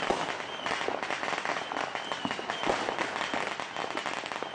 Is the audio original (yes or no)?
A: yes